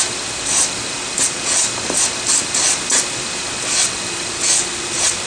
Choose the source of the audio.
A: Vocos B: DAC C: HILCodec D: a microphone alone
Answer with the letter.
D